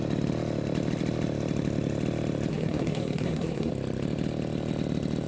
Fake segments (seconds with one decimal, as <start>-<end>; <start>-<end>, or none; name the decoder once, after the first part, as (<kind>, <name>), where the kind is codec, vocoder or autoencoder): 2.5-3.7 (codec, SNAC)